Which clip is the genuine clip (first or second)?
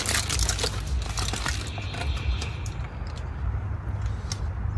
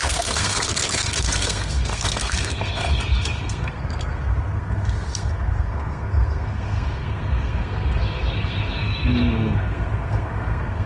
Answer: first